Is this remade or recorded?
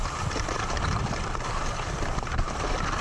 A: recorded